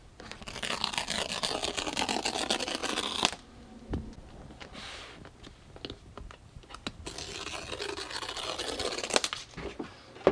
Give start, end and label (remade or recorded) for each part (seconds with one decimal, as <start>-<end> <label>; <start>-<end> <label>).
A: 0.0-10.3 recorded